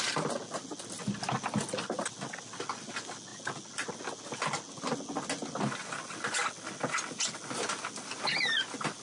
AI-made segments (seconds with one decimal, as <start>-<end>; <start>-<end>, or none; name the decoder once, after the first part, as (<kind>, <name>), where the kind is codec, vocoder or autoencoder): none